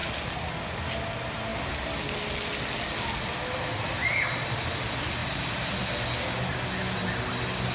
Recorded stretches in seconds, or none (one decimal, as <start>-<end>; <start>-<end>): 0.0-7.7